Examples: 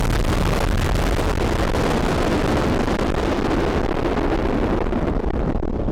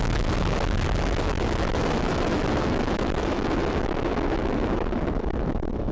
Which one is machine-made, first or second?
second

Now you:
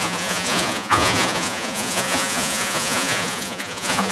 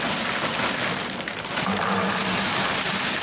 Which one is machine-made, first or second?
first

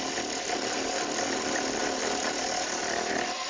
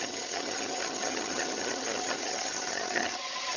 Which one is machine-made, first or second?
second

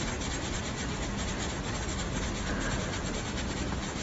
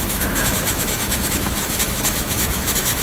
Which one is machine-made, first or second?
second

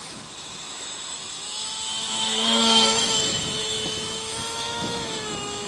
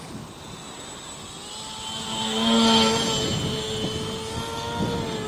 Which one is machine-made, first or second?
first